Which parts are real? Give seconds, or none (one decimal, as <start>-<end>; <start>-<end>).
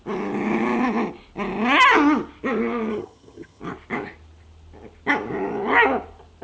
0.0-2.9; 3.6-6.4